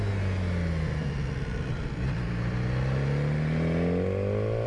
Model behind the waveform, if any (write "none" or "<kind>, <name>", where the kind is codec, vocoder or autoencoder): none